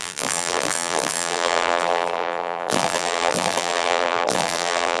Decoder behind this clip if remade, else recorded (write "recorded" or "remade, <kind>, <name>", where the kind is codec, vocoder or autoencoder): remade, vocoder, BigVGAN v2